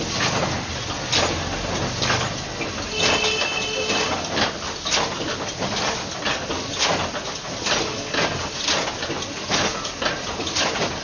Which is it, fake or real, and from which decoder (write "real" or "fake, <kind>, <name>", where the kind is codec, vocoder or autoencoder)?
real